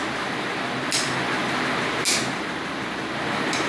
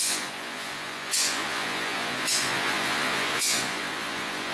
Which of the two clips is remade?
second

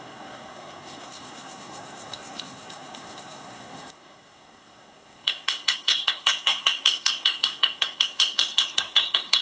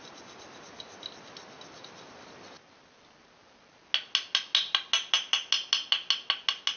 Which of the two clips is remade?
first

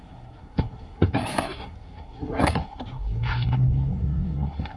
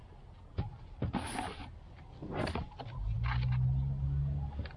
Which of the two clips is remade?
first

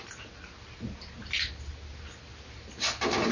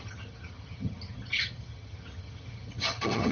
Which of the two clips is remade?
second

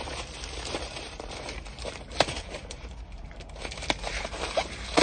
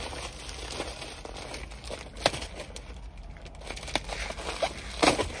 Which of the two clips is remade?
first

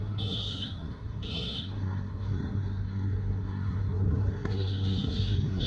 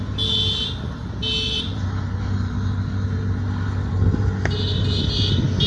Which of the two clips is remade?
first